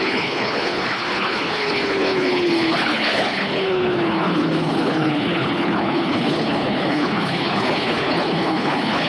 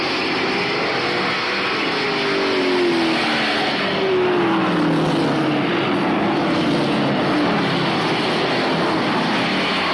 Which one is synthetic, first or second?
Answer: first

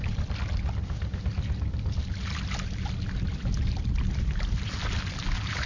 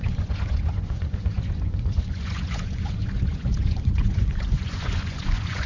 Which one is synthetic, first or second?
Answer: second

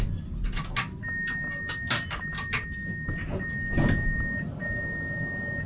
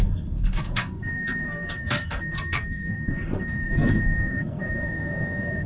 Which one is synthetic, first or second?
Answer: second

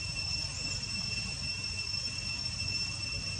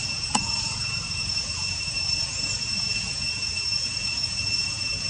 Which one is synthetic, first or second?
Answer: second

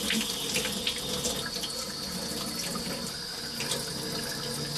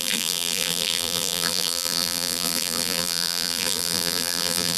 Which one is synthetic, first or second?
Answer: second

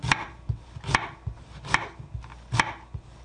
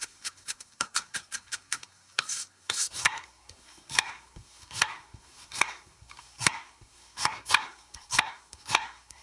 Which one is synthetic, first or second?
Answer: second